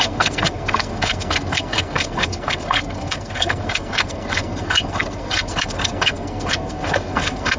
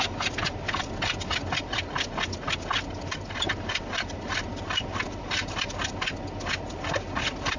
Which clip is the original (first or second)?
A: second